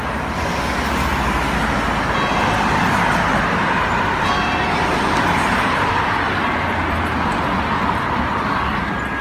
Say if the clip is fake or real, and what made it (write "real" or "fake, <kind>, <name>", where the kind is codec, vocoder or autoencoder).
real